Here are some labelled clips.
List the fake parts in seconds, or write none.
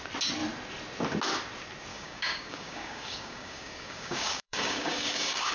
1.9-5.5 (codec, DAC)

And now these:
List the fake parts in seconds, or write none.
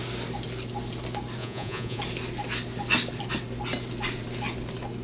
1.4-2.0 (vocoder, Vocos)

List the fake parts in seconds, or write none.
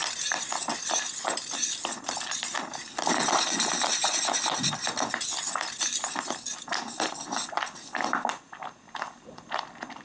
none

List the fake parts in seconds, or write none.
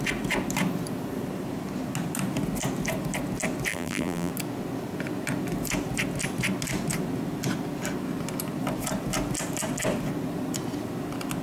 3.7-4.3 (vocoder, BigVGAN v2)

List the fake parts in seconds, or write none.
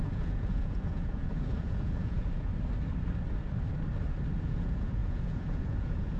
0.0-2.5 (vocoder, Vocos); 4.4-6.2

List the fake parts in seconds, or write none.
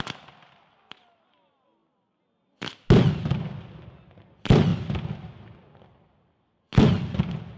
none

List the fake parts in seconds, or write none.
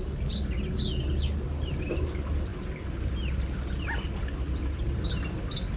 none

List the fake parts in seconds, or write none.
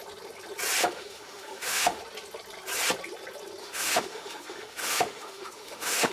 0.8-2.0 (autoencoder, DAC-VAE); 3.6-6.1